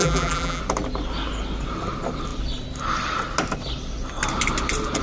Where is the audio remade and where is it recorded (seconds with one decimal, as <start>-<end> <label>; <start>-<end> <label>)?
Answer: 0.0-0.6 remade; 0.6-5.0 recorded